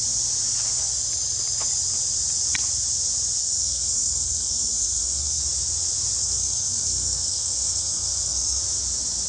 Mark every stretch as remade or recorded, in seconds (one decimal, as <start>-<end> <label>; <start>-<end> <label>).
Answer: 0.0-3.4 recorded; 3.4-5.4 remade; 5.4-6.2 recorded; 6.2-8.6 remade; 8.6-9.3 recorded